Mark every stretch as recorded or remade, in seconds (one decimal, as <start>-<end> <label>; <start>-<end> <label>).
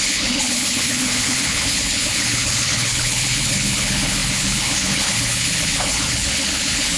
0.0-7.0 remade